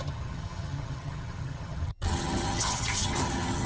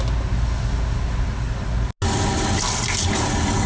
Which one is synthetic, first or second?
first